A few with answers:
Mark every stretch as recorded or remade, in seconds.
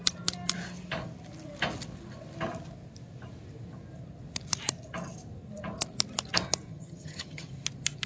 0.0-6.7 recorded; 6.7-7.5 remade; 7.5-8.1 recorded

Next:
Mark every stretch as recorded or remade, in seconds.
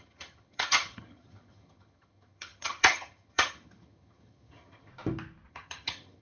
0.0-4.9 remade; 4.9-5.5 recorded; 5.5-6.2 remade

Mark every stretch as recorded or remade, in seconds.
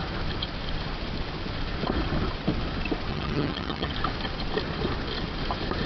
0.0-3.1 recorded; 3.1-3.9 remade; 3.9-5.9 recorded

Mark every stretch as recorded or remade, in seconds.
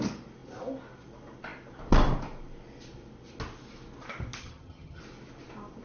0.0-4.4 recorded; 4.4-5.0 remade; 5.0-5.8 recorded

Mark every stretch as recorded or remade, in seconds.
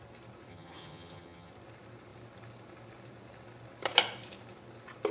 0.0-0.5 recorded; 0.5-1.5 remade; 1.5-5.1 recorded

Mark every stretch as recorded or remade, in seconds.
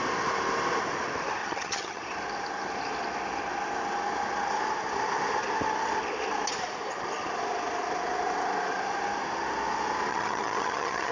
0.0-1.4 recorded; 1.4-2.0 remade; 2.0-10.1 recorded; 10.1-11.1 remade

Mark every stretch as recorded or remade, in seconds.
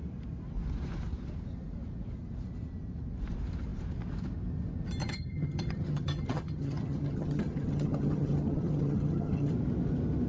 0.0-5.0 recorded; 5.0-9.5 remade; 9.5-10.3 recorded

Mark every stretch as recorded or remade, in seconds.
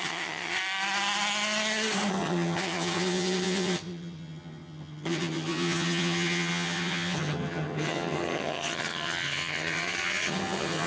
0.0-0.6 remade; 0.6-2.1 recorded; 2.1-10.9 remade